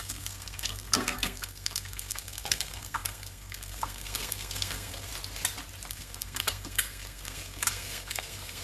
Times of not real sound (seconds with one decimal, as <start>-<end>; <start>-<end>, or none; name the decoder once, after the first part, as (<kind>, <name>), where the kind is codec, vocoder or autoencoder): 0.0-5.1 (codec, SNAC); 5.9-8.6